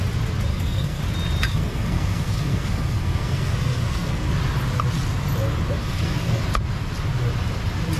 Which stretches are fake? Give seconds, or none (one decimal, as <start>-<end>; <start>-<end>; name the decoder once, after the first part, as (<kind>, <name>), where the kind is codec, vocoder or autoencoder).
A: 0.5-1.0 (codec, SNAC); 1.5-4.3; 5.8-6.4

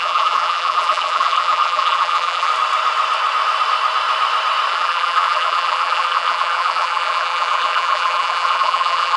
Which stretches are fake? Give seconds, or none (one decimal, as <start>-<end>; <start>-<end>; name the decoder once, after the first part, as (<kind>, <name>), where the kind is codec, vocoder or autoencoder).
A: 0.0-2.5 (vocoder, BigVGAN v2); 4.7-9.2

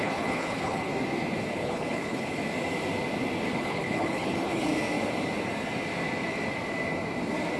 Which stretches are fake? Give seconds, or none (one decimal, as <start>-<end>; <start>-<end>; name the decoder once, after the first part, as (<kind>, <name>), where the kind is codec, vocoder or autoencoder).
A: 0.0-0.9 (codec, HILCodec); 1.5-2.4; 3.5-4.7

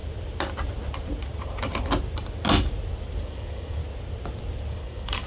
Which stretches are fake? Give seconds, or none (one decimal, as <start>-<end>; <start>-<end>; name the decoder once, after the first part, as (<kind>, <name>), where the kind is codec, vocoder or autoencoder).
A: 3.2-3.8 (codec, DAC); 4.7-5.3